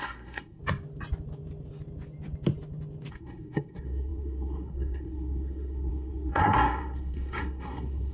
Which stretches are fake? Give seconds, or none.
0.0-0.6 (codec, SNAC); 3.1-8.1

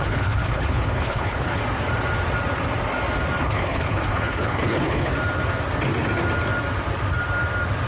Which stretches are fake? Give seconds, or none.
0.0-1.6 (codec, HILCodec); 3.4-5.1